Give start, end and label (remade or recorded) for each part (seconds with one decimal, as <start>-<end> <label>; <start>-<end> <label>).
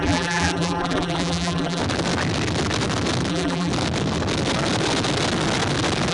0.0-1.8 remade; 1.8-3.3 recorded; 3.3-3.7 remade; 3.7-6.1 recorded